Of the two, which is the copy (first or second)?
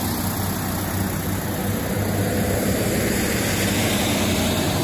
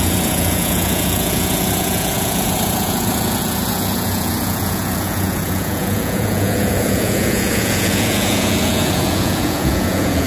second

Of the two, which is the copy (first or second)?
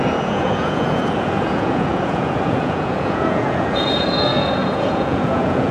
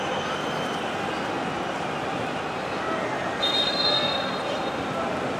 first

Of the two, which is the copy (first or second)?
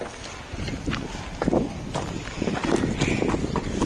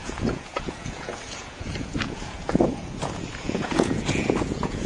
second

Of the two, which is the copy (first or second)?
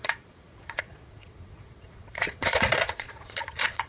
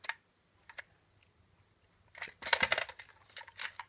first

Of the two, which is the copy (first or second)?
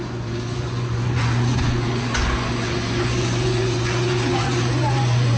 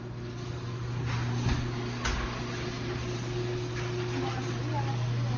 first